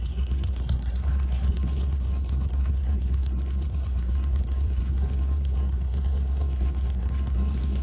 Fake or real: fake